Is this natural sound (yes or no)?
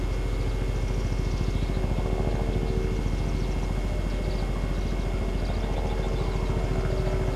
yes